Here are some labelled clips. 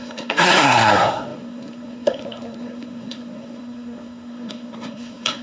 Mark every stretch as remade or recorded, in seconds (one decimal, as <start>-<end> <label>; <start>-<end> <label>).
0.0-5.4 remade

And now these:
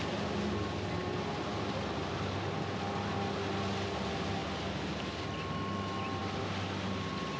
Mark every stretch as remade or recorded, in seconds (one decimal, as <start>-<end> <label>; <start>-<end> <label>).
0.0-7.4 recorded

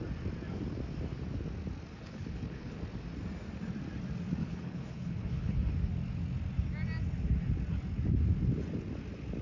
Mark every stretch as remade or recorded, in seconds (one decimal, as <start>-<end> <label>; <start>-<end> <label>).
0.0-1.9 recorded; 1.9-2.8 remade; 2.8-4.4 recorded; 4.4-5.7 remade; 5.7-9.4 recorded